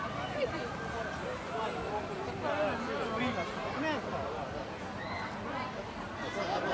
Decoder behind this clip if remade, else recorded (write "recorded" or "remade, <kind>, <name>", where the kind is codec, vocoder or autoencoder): recorded